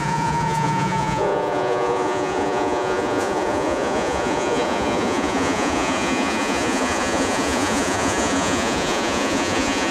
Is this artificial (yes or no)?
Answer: yes